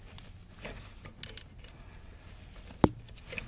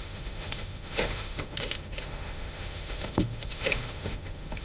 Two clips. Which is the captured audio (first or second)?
first